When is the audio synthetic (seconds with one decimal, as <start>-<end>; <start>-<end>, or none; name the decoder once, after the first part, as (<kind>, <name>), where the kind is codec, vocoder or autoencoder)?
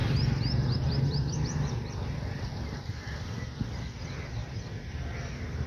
0.8-5.7 (vocoder, BigVGAN v2)